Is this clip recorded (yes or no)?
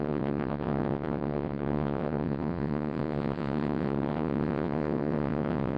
no